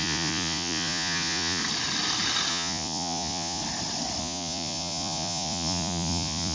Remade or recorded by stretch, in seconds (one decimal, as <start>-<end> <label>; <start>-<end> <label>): 0.0-1.6 remade; 1.6-2.5 recorded; 2.5-3.6 remade; 3.6-4.2 recorded; 4.2-6.5 remade

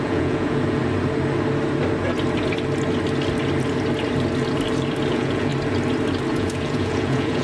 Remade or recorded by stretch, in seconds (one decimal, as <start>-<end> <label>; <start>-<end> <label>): 0.0-0.8 remade; 0.8-5.1 recorded; 5.1-5.5 remade; 5.5-6.3 recorded; 6.3-7.4 remade

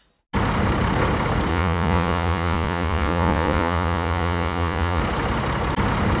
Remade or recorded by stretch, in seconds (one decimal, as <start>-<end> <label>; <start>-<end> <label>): 0.0-1.5 recorded; 1.5-5.0 remade; 5.0-6.2 recorded

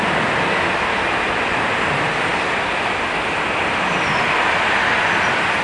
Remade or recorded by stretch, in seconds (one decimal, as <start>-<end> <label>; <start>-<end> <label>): 0.0-5.6 recorded

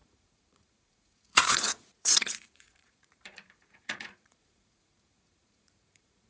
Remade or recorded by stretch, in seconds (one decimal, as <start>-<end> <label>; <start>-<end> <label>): 0.0-6.3 remade

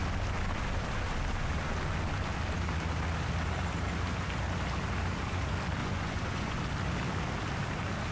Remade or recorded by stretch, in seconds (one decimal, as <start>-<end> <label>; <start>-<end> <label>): 0.0-5.8 recorded; 5.8-6.6 remade; 6.6-8.1 recorded

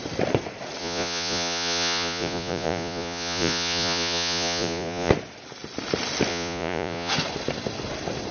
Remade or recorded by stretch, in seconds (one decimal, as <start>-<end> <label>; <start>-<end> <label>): 0.0-0.8 recorded; 0.8-5.1 remade; 5.1-6.3 recorded; 6.3-7.1 remade; 7.1-8.3 recorded

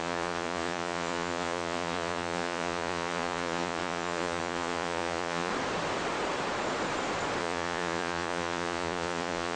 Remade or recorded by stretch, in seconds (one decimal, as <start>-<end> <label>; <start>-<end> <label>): 0.0-5.5 remade; 5.5-7.4 recorded; 7.4-9.6 remade